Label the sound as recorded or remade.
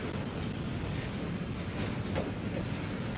recorded